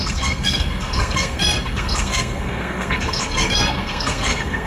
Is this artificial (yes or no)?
yes